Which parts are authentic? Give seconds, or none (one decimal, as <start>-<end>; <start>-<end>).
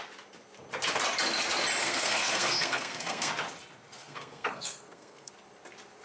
0.0-1.8; 3.3-4.0; 5.3-6.0